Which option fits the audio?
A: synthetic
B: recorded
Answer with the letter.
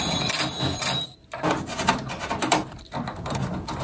B